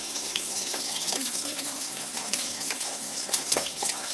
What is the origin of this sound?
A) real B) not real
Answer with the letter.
B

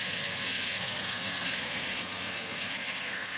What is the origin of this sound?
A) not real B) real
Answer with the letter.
A